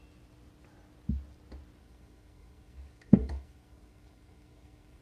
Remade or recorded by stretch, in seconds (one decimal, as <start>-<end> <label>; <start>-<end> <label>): 0.0-1.8 recorded; 1.8-5.0 remade